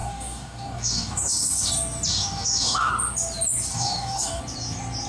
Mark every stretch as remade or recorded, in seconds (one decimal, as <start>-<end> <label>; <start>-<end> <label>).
0.0-1.7 remade; 1.7-2.1 recorded; 2.1-2.9 remade; 2.9-3.7 recorded; 3.7-4.4 remade; 4.4-5.1 recorded